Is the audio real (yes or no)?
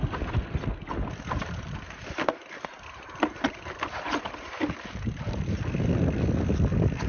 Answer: yes